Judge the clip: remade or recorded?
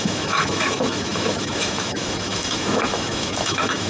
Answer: remade